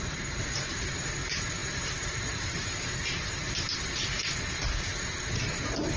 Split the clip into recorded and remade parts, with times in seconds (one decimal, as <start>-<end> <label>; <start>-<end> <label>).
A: 0.0-6.0 remade